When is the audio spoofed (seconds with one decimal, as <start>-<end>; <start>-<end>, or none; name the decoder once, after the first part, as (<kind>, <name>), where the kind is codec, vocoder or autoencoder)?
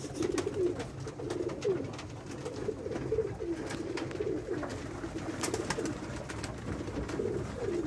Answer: none